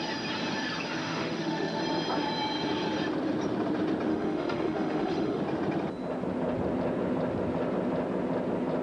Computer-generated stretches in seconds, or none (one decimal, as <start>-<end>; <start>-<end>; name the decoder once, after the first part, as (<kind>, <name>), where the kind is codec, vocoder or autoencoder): 1.0-1.8 (autoencoder, DAC-VAE); 4.1-5.4